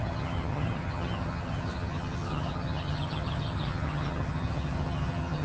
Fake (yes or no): yes